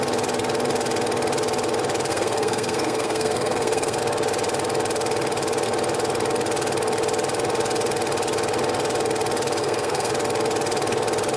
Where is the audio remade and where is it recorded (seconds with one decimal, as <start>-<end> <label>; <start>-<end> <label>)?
0.0-2.1 recorded; 2.1-4.0 remade; 4.0-9.6 recorded; 9.6-10.1 remade; 10.1-11.4 recorded